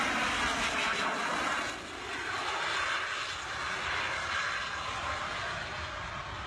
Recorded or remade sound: recorded